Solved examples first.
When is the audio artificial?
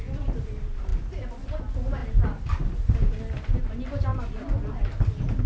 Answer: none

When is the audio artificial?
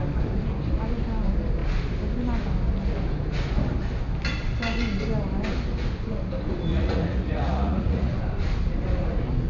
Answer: 6.7-8.2 (vocoder, Vocos)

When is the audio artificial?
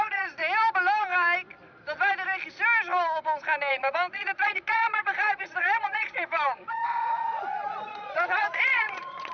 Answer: 0.0-0.4 (vocoder, Vocos); 3.7-9.3